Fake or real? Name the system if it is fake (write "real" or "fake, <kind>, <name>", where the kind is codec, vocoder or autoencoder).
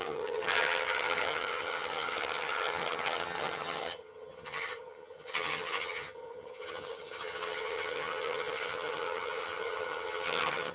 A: fake, vocoder, HiFi-GAN